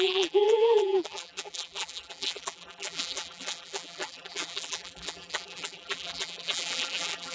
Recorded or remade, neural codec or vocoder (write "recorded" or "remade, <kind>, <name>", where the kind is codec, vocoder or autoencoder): remade, vocoder, BigVGAN v2